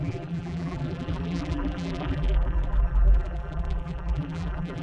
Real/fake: fake